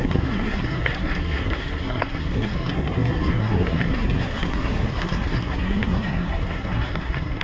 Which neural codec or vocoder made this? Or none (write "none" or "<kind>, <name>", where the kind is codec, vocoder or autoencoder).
codec, SNAC